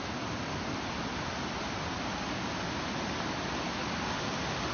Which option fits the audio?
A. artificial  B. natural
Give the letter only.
B